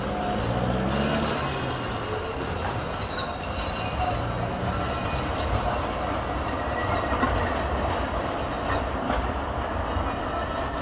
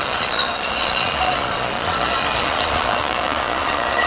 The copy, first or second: second